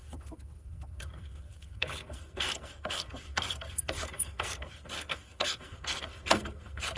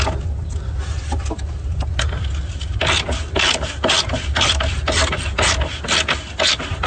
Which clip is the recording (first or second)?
second